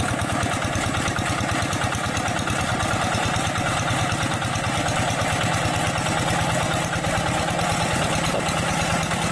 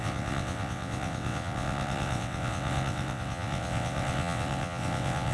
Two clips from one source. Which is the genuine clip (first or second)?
first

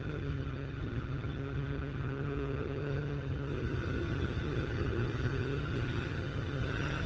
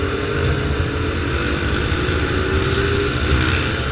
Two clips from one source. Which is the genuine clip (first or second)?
second